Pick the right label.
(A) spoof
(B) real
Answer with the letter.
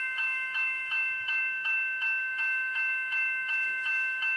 A